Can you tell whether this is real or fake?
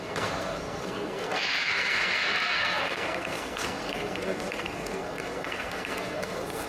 fake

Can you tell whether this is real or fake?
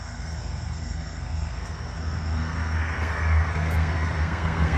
fake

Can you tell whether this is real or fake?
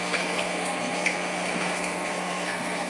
fake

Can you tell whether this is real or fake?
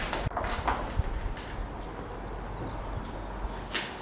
real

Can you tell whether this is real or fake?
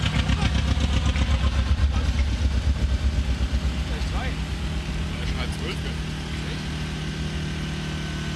real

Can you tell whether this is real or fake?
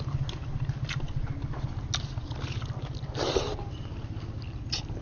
real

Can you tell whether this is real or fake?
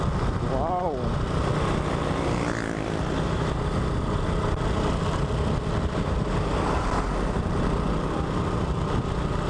real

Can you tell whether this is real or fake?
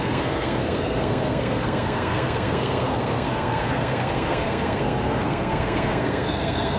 fake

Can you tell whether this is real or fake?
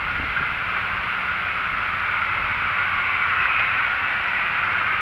real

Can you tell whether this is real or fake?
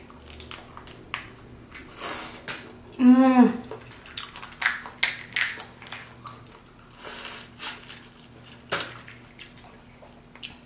real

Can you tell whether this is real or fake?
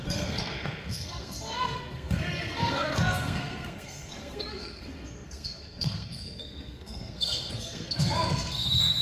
fake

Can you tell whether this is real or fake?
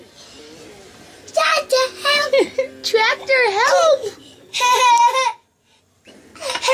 real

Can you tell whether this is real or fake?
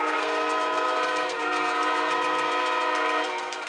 fake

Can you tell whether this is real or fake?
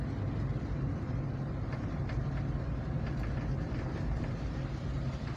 real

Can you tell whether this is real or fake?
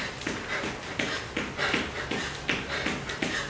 real